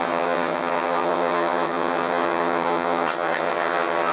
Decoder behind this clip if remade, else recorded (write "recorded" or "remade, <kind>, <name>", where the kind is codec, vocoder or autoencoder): remade, vocoder, HiFi-GAN